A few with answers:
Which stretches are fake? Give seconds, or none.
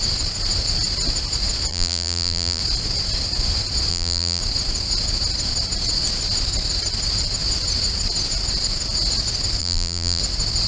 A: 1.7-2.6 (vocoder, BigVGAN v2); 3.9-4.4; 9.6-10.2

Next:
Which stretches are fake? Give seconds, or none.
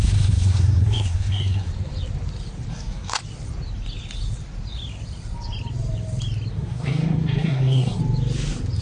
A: 0.0-1.7 (codec, SNAC); 2.7-3.2; 6.5-8.0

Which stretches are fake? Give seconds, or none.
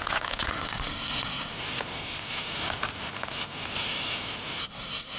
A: 0.5-1.5 (codec, SNAC); 4.6-5.2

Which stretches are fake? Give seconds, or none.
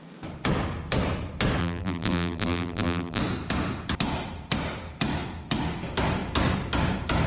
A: 1.6-3.2 (vocoder, BigVGAN v2)